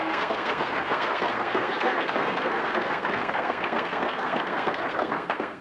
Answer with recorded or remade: remade